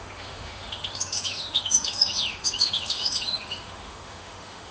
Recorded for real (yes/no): no